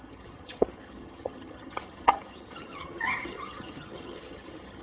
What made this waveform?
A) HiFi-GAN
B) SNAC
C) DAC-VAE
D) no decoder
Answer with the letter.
A